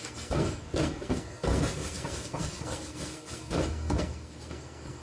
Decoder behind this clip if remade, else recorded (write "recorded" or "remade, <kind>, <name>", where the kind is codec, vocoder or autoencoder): remade, codec, SNAC